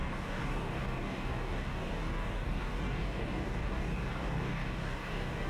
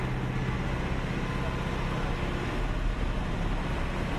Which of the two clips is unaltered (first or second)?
second